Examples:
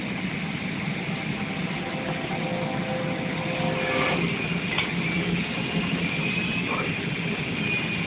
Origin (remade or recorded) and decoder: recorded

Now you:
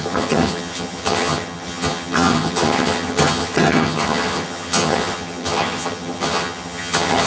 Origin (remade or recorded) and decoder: remade, vocoder, HiFi-GAN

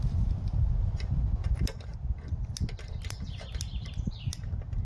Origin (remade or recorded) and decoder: recorded